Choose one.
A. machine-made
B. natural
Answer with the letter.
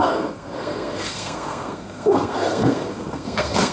A